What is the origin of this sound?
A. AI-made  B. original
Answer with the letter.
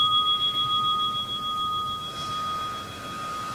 B